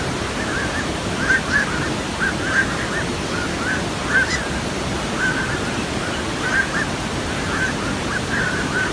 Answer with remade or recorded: recorded